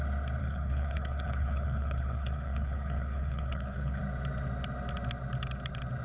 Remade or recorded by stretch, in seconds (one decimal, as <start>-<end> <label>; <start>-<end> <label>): 0.0-0.4 recorded; 0.4-4.0 remade; 4.0-6.0 recorded